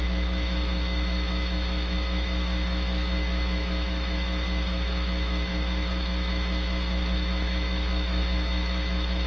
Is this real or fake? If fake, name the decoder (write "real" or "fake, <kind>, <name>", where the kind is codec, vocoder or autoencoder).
fake, autoencoder, DAC-VAE